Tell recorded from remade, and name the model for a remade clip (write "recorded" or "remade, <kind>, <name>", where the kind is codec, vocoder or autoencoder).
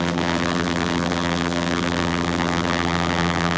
remade, vocoder, BigVGAN v2